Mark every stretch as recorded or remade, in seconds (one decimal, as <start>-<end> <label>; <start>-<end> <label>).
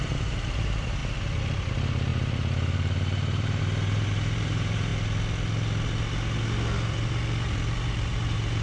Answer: 0.0-1.0 remade; 1.0-1.6 recorded; 1.6-4.9 remade; 4.9-8.1 recorded; 8.1-8.6 remade